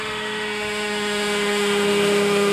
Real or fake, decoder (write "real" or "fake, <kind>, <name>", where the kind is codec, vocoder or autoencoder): fake, autoencoder, DAC-VAE